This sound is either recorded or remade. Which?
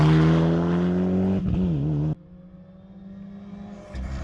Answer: recorded